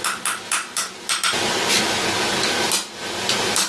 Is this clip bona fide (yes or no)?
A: yes